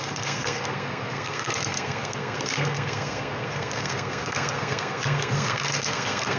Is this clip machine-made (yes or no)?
yes